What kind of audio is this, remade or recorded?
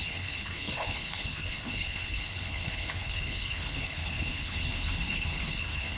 remade